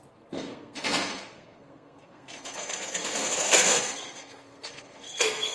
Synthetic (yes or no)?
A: yes